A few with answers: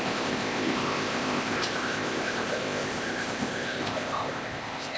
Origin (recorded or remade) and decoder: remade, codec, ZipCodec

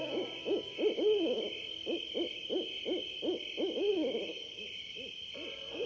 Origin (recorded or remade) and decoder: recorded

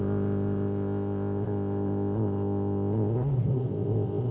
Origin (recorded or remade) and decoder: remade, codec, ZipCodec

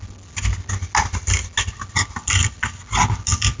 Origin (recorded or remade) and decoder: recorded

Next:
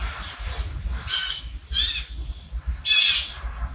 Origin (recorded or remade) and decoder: recorded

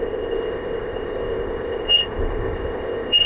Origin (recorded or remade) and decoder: remade, codec, ZipCodec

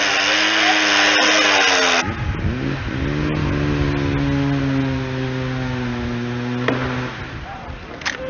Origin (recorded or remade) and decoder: recorded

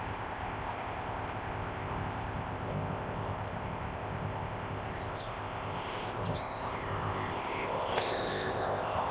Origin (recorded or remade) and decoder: remade, codec, ZipCodec